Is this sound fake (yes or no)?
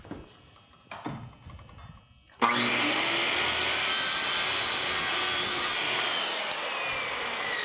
no